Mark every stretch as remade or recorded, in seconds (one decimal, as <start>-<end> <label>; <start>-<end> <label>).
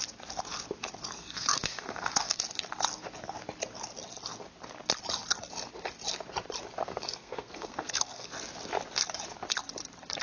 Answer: 0.0-1.2 recorded; 1.2-2.4 remade; 2.4-6.8 recorded; 6.8-8.3 remade; 8.3-10.2 recorded